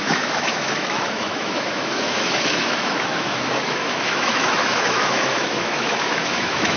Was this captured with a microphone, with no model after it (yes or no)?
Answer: no